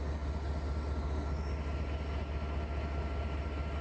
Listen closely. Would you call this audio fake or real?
real